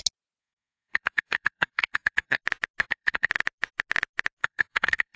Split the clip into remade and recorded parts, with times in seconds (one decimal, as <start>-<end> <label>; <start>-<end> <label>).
0.0-0.4 recorded; 0.4-2.4 remade; 2.4-2.8 recorded; 2.8-3.3 remade; 3.3-4.4 recorded; 4.4-5.2 remade